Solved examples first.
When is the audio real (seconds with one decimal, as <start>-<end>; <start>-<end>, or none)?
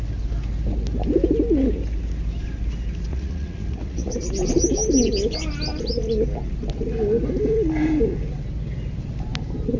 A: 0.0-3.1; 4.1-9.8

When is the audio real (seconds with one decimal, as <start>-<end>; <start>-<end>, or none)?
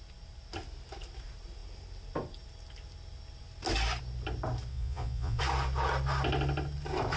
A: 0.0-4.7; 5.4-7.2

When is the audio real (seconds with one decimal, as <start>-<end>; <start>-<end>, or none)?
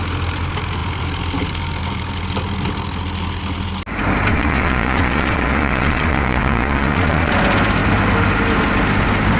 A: 0.0-4.3; 7.3-9.4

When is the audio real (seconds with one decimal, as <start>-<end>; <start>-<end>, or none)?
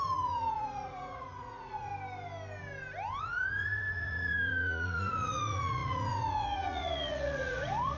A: 1.9-3.2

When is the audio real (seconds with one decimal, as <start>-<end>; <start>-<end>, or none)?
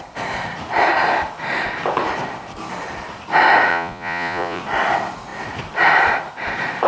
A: 0.0-3.7; 4.6-6.9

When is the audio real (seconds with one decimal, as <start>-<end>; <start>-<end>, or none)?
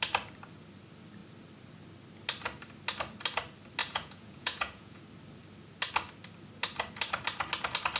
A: 0.0-3.8; 5.0-8.0